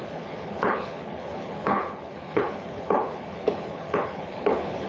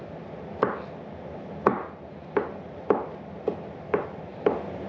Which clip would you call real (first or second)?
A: second